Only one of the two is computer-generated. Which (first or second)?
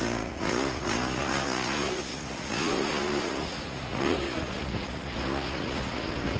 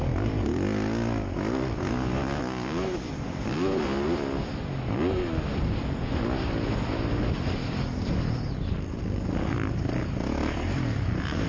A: first